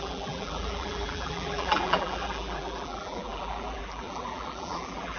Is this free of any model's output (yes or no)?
no